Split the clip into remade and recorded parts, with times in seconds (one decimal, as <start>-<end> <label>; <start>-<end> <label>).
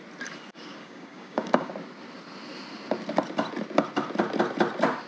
0.0-0.5 recorded; 0.5-1.7 remade; 1.7-5.1 recorded